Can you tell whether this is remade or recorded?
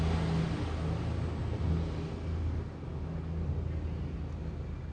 recorded